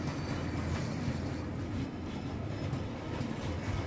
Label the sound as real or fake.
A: real